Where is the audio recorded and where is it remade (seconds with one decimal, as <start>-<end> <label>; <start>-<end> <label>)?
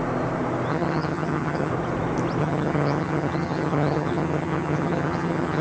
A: 0.0-0.7 recorded; 0.7-1.7 remade; 1.7-2.4 recorded; 2.4-5.6 remade